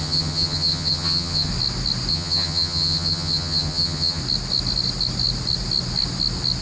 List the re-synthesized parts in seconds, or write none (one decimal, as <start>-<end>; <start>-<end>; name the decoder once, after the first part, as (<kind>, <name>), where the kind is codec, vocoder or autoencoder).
0.0-1.5 (vocoder, HiFi-GAN); 2.1-4.2

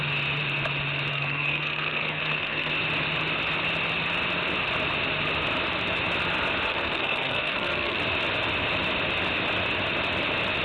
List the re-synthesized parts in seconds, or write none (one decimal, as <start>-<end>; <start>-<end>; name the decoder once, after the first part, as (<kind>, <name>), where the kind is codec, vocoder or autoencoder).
1.1-2.7 (codec, SNAC); 6.7-8.0

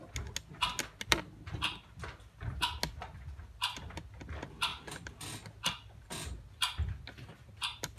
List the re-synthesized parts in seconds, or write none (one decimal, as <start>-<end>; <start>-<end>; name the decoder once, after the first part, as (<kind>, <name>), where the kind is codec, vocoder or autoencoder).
none

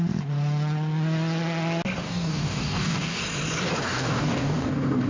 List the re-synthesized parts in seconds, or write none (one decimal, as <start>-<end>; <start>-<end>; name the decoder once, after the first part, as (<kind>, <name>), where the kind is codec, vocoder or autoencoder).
2.0-3.2 (codec, DAC); 3.7-5.1

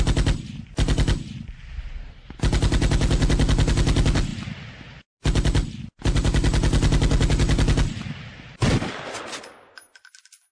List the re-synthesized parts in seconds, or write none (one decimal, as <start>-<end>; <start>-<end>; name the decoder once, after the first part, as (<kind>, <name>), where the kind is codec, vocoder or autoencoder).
none